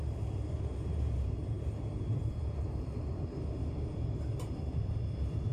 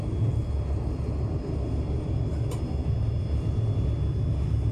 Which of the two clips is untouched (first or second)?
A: second